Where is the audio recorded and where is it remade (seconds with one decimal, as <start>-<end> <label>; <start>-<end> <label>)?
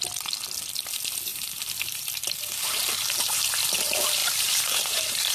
0.0-1.3 recorded; 1.3-2.1 remade; 2.1-4.2 recorded; 4.2-5.3 remade